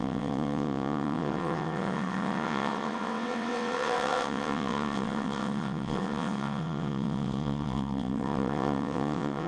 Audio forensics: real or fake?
fake